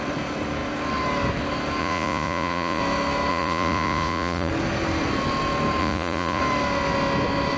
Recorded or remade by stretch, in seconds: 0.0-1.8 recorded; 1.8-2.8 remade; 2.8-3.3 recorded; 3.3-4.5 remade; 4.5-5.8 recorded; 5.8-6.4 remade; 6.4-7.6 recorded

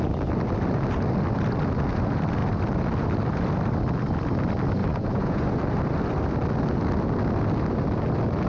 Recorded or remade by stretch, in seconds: 0.0-4.8 recorded; 4.8-5.6 remade; 5.6-8.5 recorded

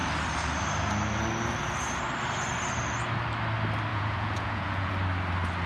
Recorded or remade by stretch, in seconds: 0.0-3.9 recorded; 3.9-4.9 remade; 4.9-5.7 recorded